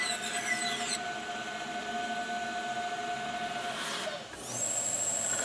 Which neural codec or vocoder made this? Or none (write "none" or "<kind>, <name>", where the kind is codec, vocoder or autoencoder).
none